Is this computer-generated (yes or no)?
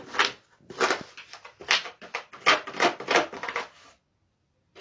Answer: no